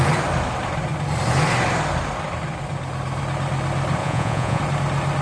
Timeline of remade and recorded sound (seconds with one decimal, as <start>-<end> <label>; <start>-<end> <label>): 0.0-4.0 recorded; 4.0-4.6 remade; 4.6-5.2 recorded